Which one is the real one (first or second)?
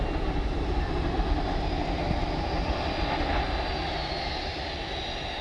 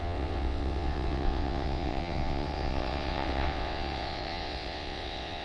first